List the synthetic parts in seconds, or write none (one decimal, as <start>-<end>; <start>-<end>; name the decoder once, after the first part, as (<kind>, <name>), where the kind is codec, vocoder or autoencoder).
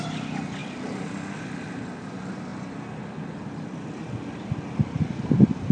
0.6-1.7 (vocoder, BigVGAN v2); 2.5-4.7